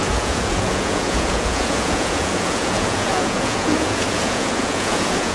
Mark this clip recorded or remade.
remade